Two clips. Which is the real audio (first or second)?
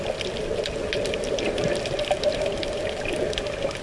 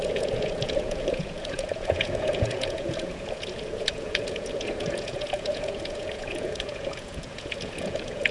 first